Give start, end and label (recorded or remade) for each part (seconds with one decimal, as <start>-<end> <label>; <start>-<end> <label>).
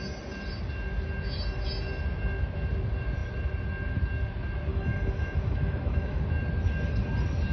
0.0-4.7 recorded; 4.7-6.2 remade; 6.2-7.5 recorded